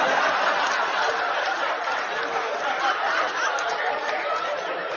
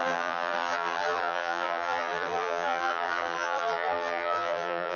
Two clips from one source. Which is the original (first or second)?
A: first